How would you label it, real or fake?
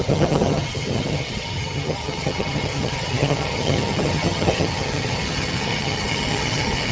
fake